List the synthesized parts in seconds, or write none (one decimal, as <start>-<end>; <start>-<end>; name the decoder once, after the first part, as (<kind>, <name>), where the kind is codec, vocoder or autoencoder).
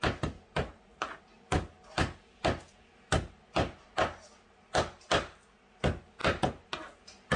none